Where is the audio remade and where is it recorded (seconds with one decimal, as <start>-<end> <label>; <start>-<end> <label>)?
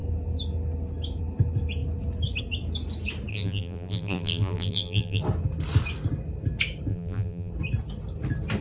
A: 0.0-3.3 recorded; 3.3-5.2 remade; 5.2-6.9 recorded; 6.9-7.5 remade; 7.5-8.6 recorded